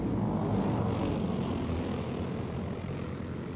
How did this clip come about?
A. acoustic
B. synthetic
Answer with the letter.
A